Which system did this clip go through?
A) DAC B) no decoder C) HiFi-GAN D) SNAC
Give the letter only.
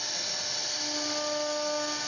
B